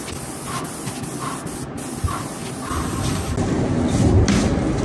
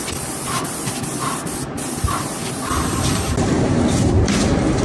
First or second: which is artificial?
second